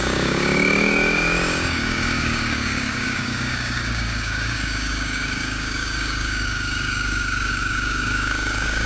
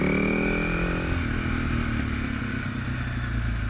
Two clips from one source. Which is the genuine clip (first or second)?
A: second